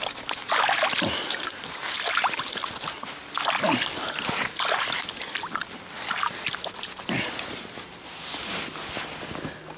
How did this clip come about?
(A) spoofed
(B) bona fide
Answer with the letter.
B